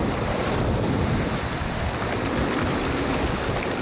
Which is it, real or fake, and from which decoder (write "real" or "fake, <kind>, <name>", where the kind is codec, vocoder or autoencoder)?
real